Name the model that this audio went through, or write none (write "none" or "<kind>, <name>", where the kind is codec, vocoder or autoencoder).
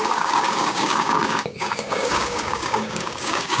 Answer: codec, DAC